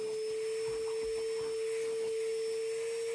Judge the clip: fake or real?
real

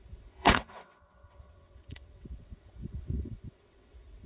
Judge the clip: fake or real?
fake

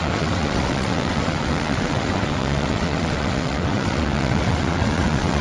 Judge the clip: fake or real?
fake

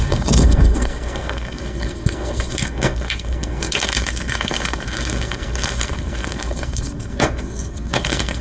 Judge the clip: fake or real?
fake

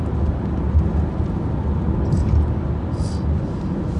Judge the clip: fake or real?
real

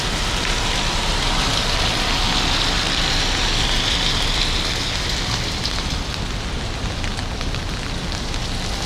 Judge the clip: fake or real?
real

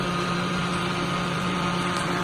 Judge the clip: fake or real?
real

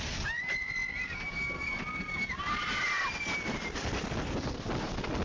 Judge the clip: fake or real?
real